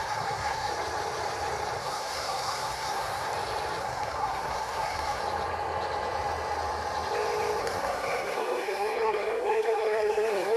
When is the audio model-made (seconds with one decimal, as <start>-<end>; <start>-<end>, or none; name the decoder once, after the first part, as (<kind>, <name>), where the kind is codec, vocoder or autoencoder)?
0.0-0.7 (codec, SNAC); 1.8-3.3; 3.8-5.2; 7.6-10.6

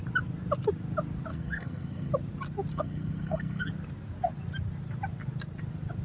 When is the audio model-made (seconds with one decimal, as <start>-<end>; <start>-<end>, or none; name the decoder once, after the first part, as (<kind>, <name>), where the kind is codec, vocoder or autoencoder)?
1.3-2.1 (codec, SNAC); 2.7-3.7

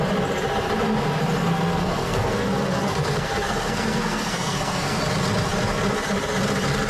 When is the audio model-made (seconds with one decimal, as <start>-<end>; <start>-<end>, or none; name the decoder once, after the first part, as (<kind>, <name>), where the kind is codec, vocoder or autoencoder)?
1.4-5.0 (codec, SNAC)

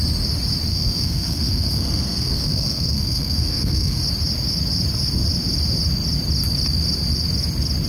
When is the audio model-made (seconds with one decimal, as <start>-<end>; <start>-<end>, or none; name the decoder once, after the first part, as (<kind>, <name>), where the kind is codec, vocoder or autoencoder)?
0.7-4.0 (codec, SNAC)

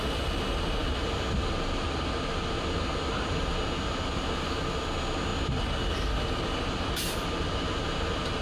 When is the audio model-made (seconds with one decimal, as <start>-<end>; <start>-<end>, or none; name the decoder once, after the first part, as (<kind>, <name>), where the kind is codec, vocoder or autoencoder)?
none

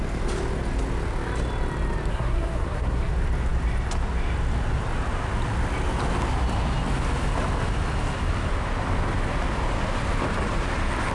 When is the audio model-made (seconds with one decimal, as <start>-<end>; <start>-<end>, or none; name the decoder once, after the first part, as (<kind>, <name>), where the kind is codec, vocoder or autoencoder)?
2.1-3.1 (codec, SNAC)